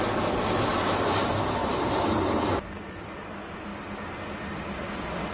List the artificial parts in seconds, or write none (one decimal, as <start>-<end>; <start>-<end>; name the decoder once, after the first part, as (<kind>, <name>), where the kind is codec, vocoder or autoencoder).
none